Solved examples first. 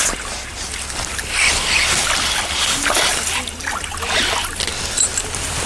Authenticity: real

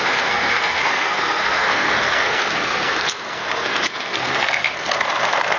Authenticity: fake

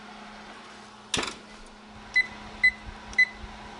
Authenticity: real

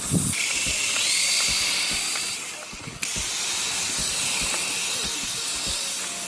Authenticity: real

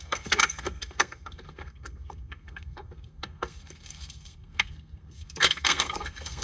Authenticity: fake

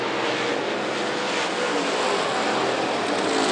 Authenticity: real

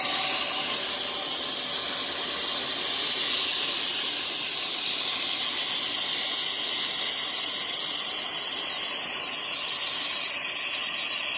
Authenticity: real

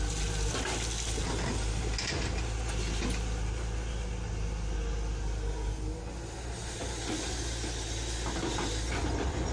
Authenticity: real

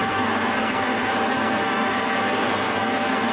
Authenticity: fake